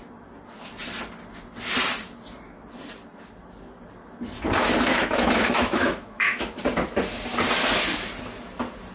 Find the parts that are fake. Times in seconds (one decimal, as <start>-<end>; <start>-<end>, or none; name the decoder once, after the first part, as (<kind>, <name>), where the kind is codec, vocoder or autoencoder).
4.9-6.6 (autoencoder, DAC-VAE)